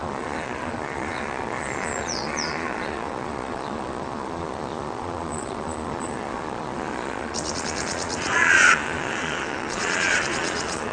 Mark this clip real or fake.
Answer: fake